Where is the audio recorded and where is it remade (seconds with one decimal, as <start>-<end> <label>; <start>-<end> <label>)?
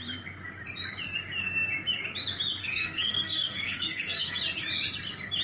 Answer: 0.0-2.6 recorded; 2.6-4.4 remade; 4.4-5.4 recorded